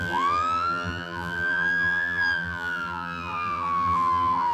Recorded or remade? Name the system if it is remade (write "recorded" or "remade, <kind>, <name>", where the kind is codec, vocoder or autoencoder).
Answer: remade, vocoder, BigVGAN v2